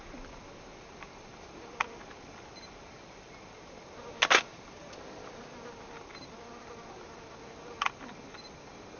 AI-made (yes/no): no